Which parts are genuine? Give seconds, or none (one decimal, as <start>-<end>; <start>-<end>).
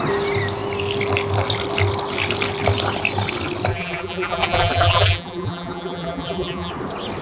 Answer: 0.0-3.7; 6.7-7.2